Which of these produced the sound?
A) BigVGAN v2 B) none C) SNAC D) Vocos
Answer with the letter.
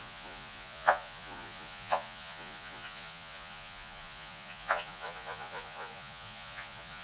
D